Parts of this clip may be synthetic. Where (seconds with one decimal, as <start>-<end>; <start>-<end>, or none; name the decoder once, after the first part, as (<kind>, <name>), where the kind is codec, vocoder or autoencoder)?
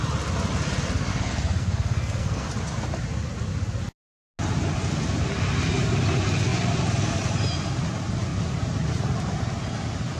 1.1-2.5 (codec, SNAC)